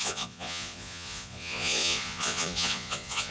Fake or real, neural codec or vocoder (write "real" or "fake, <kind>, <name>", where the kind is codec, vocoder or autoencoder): fake, vocoder, Vocos